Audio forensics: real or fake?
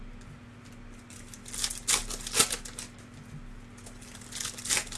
real